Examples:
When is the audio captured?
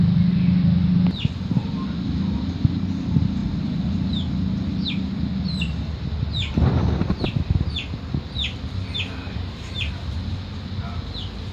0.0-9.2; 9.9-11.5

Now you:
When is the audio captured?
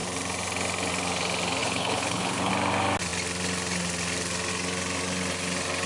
0.0-1.6; 2.5-5.9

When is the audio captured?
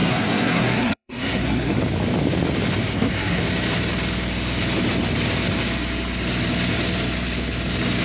1.8-2.8; 3.4-8.0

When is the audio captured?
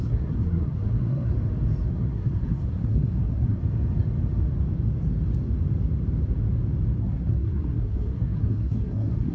1.3-1.9; 3.6-7.0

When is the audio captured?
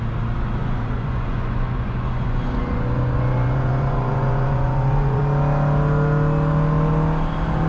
0.0-0.6; 5.2-7.7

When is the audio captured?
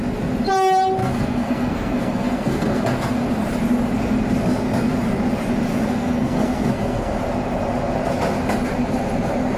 0.0-1.0; 2.8-5.7; 7.2-9.6